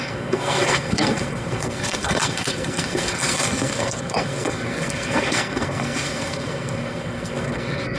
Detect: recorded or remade remade